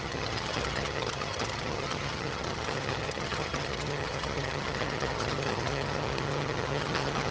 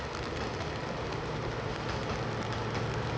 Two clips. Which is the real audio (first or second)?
second